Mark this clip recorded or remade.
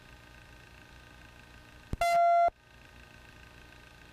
recorded